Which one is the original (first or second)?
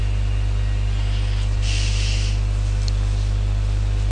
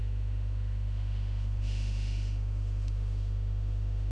first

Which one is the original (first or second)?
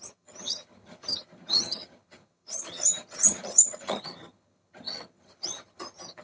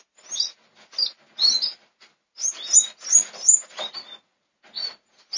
second